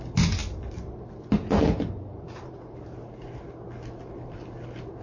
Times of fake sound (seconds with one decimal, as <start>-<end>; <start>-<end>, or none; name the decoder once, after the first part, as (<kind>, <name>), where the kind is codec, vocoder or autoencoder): none